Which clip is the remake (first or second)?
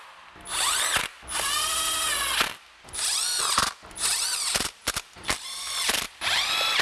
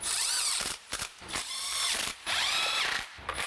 second